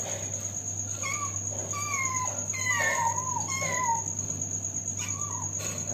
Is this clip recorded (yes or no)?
no